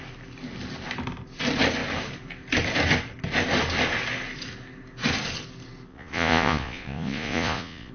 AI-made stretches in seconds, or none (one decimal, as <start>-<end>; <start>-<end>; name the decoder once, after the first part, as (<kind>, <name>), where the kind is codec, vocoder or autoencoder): 5.9-7.9 (vocoder, Vocos)